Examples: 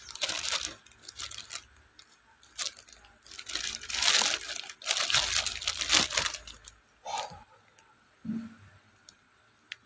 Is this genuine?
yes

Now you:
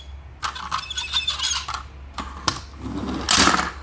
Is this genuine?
yes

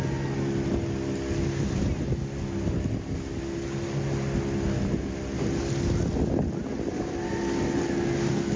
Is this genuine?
yes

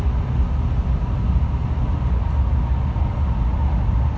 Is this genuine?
yes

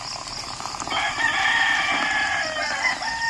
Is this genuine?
yes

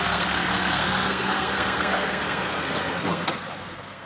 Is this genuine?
no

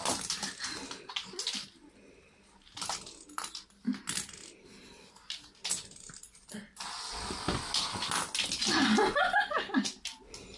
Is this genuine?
yes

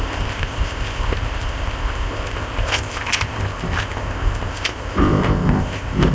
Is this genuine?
no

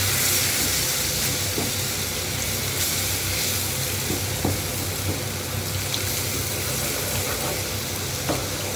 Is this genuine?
yes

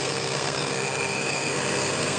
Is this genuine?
no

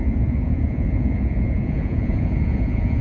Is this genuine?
no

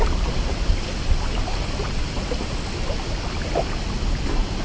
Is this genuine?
yes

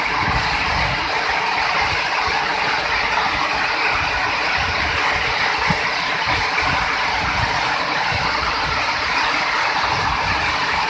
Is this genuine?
yes